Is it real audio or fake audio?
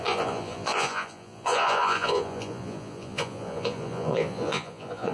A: fake